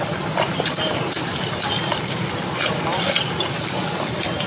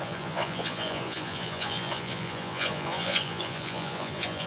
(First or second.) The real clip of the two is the first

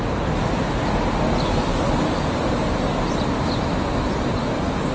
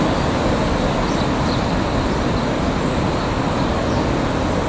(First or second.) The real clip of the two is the first